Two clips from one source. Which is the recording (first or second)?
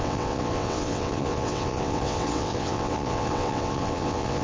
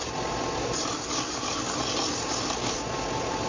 second